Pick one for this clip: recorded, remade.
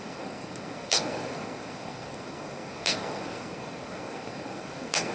remade